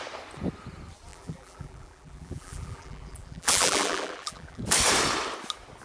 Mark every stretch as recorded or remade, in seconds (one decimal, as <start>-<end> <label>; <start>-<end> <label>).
0.0-1.1 recorded; 1.1-4.6 remade; 4.6-5.8 recorded